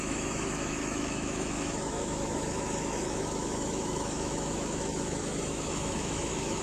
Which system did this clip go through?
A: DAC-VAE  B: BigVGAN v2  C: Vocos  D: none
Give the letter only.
A